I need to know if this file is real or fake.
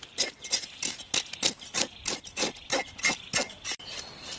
real